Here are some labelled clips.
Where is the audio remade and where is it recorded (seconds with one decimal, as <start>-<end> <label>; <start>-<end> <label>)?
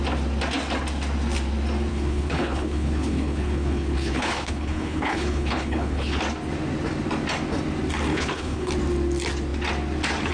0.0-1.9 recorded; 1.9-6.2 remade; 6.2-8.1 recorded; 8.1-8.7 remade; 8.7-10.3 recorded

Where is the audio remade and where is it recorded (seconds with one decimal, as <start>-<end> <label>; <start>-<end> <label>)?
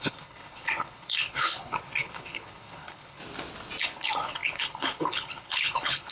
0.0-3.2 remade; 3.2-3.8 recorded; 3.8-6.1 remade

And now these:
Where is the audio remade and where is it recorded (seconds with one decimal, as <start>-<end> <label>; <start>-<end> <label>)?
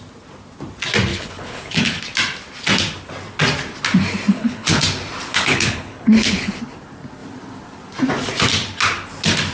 0.0-1.1 recorded; 1.1-2.0 remade; 2.0-4.3 recorded; 4.3-4.8 remade; 4.8-5.3 recorded; 5.3-6.6 remade; 6.6-9.5 recorded